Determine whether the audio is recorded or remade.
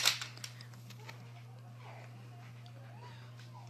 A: recorded